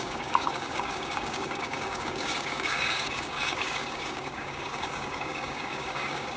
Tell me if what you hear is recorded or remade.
remade